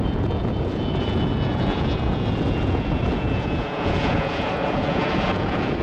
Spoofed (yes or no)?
yes